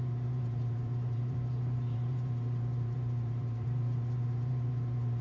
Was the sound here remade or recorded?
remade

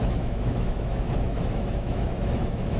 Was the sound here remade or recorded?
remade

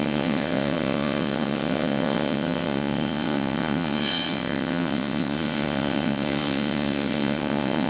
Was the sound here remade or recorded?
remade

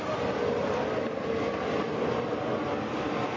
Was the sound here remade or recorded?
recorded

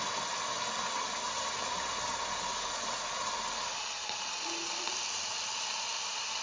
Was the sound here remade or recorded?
recorded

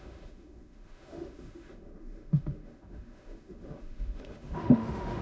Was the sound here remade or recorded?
remade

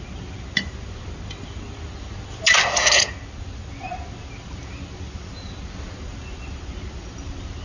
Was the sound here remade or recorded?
recorded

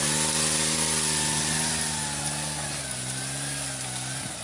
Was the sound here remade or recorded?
recorded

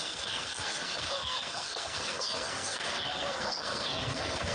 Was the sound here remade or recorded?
remade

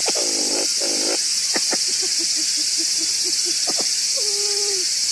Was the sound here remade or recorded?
recorded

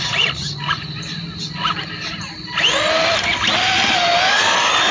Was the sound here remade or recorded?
recorded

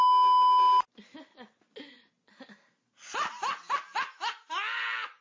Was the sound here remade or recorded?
recorded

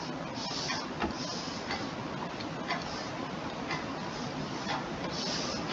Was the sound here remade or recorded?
recorded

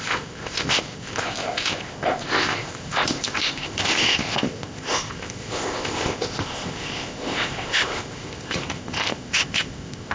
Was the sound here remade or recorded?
remade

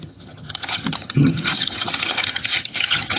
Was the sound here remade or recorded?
remade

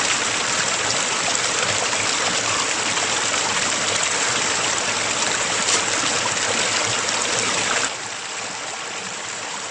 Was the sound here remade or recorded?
remade